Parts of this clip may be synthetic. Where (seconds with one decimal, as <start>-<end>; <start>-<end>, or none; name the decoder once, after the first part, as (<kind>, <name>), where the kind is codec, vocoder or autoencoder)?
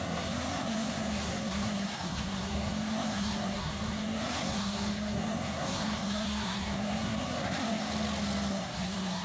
0.0-7.9 (codec, SNAC); 8.5-9.2